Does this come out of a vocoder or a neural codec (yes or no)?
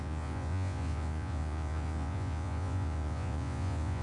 yes